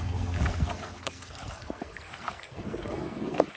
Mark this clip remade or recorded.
remade